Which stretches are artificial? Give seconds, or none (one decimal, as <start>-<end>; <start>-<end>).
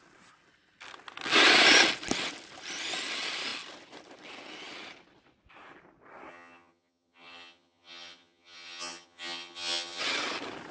6.3-10.0